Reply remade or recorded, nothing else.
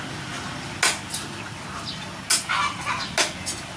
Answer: recorded